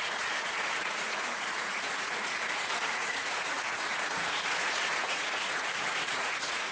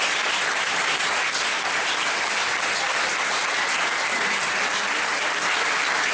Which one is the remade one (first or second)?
first